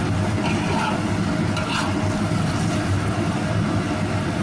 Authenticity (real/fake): real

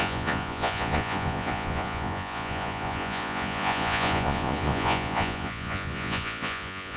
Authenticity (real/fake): fake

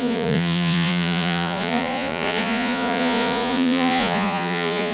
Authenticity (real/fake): fake